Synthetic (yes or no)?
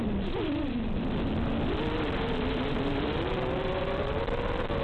no